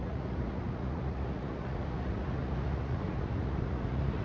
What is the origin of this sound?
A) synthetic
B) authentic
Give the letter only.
A